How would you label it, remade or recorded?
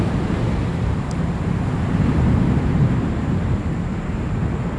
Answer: remade